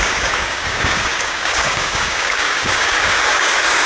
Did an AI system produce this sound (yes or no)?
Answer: yes